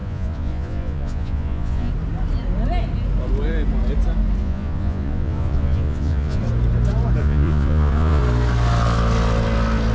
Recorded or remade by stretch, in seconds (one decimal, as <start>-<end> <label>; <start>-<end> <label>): 0.0-1.9 remade; 1.9-4.4 recorded; 4.4-6.4 remade; 6.4-7.2 recorded; 7.2-8.2 remade; 8.2-9.9 recorded